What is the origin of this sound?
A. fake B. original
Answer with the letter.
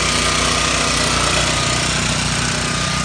B